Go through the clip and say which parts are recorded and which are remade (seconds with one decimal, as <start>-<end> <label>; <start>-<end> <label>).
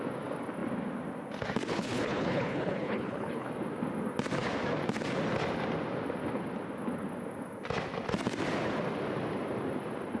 0.0-1.7 recorded; 1.7-3.5 remade; 3.5-10.2 recorded